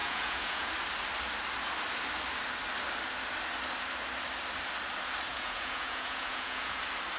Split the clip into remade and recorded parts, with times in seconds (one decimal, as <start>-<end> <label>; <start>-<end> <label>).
0.0-0.7 remade; 0.7-5.3 recorded; 5.3-6.8 remade; 6.8-7.2 recorded